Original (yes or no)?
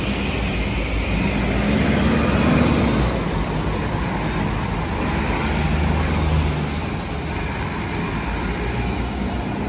yes